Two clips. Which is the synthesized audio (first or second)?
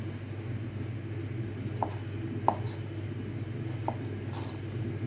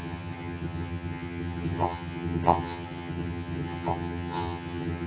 second